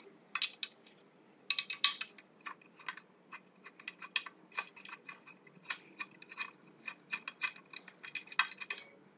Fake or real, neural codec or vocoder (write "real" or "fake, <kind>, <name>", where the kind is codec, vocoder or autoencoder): real